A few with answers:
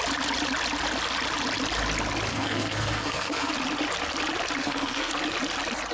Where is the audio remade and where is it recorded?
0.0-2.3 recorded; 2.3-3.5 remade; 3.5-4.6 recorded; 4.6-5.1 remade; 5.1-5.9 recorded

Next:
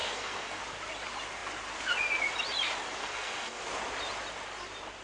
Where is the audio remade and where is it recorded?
0.0-0.6 remade; 0.6-3.0 recorded; 3.0-3.6 remade; 3.6-5.0 recorded

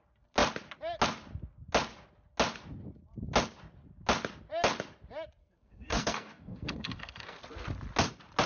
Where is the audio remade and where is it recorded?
0.0-5.4 recorded; 5.4-7.4 remade; 7.4-8.5 recorded